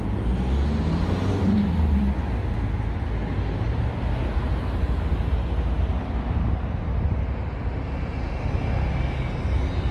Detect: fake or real real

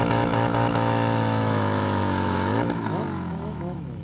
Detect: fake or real fake